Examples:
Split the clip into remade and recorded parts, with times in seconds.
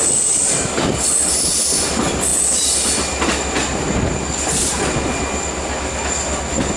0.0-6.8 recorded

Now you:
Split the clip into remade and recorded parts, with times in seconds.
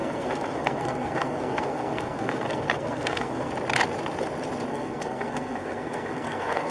0.0-3.5 remade; 3.5-4.7 recorded; 4.7-6.7 remade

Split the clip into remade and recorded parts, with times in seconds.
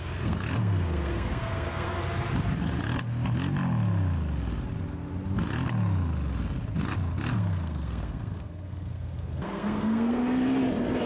0.0-2.0 remade; 2.0-7.3 recorded; 7.3-10.2 remade; 10.2-11.1 recorded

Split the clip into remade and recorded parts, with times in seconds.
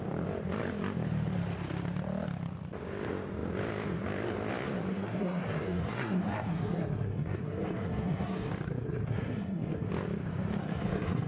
0.0-4.9 recorded; 4.9-9.9 remade; 9.9-10.6 recorded; 10.6-11.3 remade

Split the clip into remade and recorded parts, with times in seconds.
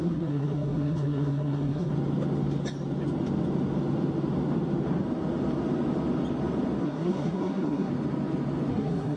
0.0-1.9 remade; 1.9-6.8 recorded; 6.8-7.9 remade; 7.9-8.7 recorded; 8.7-9.2 remade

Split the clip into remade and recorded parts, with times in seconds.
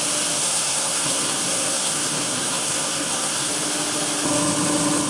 0.0-0.4 recorded; 0.4-3.5 remade; 3.5-5.1 recorded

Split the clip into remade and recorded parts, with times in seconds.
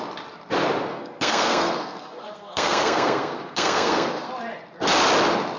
0.0-0.9 recorded; 0.9-4.3 remade; 4.3-5.6 recorded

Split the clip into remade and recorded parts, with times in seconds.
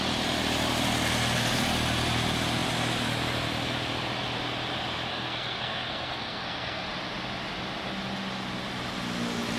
0.0-5.1 recorded; 5.1-6.8 remade; 6.8-9.6 recorded